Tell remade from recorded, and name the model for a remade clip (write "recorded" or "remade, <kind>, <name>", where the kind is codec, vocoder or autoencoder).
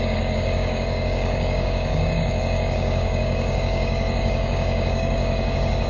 remade, codec, DAC